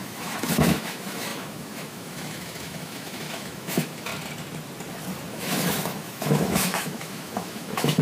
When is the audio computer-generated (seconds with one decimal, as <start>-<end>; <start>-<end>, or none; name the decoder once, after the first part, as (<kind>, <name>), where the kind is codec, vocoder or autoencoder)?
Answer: 0.0-4.1 (autoencoder, DAC-VAE); 5.3-8.0